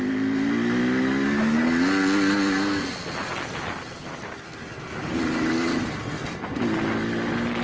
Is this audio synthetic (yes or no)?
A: no